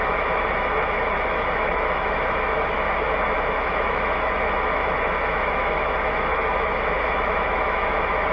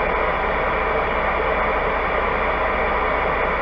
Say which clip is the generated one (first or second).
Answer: first